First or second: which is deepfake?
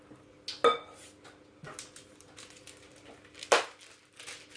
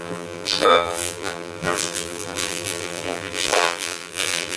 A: second